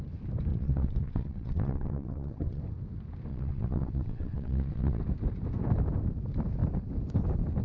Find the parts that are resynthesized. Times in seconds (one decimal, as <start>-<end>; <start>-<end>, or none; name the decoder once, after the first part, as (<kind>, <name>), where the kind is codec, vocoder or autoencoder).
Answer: 0.5-2.6 (vocoder, WaveNeXt); 3.3-5.0